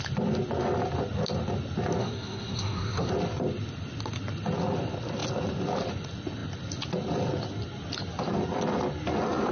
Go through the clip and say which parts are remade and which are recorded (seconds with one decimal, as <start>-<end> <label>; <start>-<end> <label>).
0.0-2.0 recorded; 2.0-3.1 remade; 3.1-9.5 recorded